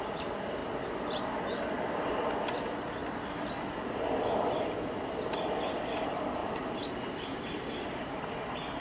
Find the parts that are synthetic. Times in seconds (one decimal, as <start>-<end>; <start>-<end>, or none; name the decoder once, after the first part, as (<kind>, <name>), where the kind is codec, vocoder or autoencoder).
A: none